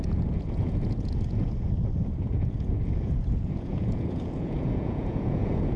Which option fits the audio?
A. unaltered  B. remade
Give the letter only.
B